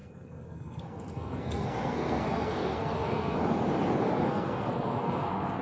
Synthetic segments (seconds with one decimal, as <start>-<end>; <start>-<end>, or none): 0.0-3.4; 4.3-5.6

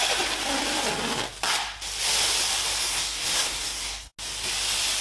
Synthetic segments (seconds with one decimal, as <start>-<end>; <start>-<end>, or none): 2.8-4.1

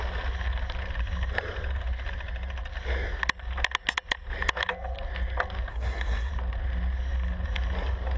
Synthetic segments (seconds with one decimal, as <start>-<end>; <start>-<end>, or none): 5.7-6.3

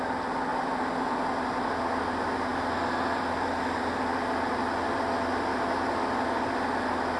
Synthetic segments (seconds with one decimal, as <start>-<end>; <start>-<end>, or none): none

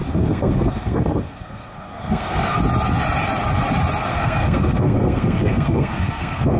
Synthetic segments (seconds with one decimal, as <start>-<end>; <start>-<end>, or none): 0.0-2.6; 4.1-6.6

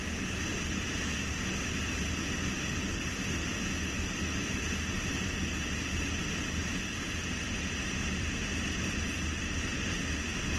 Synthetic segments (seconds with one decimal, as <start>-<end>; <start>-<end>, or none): none

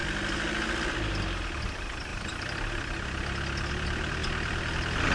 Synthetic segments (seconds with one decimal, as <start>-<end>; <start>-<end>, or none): none